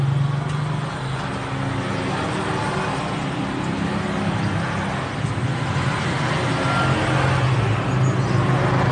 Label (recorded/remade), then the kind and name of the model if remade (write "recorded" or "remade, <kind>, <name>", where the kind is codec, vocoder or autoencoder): recorded